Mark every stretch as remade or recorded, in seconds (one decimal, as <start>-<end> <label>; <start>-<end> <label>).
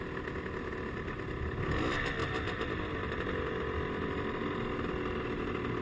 0.0-5.8 recorded